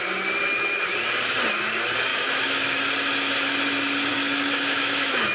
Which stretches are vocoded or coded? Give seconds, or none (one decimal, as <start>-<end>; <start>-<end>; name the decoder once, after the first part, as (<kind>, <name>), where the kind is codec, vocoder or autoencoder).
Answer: 2.1-2.8 (autoencoder, DAC-VAE); 4.1-5.3